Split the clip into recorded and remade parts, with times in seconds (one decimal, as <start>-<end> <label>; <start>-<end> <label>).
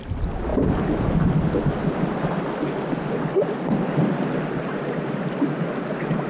0.0-6.3 recorded